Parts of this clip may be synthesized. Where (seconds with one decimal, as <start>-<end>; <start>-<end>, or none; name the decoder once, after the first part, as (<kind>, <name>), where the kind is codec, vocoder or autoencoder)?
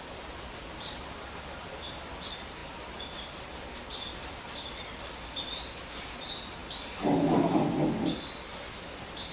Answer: none